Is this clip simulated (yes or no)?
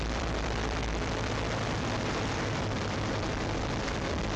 yes